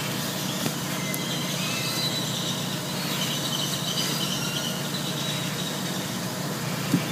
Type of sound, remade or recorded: recorded